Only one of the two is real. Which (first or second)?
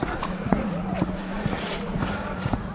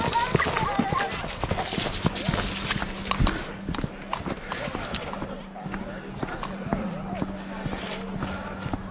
second